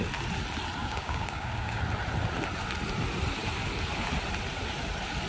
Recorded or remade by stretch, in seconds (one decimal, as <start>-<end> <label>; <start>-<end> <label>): 0.0-0.8 recorded; 0.8-1.8 remade; 1.8-5.3 recorded